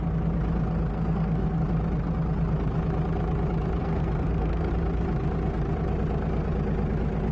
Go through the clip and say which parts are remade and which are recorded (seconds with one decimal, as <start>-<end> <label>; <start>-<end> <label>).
0.0-0.9 recorded; 0.9-1.6 remade; 1.6-3.8 recorded; 3.8-4.7 remade; 4.7-7.3 recorded